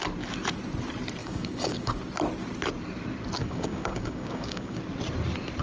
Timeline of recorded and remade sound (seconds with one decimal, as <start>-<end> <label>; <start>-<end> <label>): 0.0-1.2 recorded; 1.2-2.0 remade; 2.0-3.4 recorded; 3.4-4.8 remade; 4.8-5.6 recorded